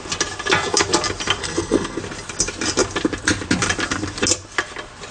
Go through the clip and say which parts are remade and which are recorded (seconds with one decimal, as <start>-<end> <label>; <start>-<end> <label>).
0.0-1.4 recorded; 1.4-2.0 remade; 2.0-5.1 recorded